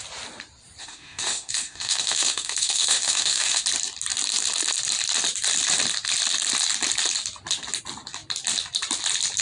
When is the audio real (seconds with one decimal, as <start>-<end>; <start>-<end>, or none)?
0.0-0.8; 3.6-9.4